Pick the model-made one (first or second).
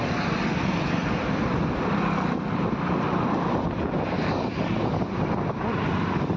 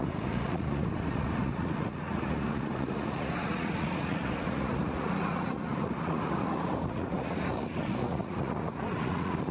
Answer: second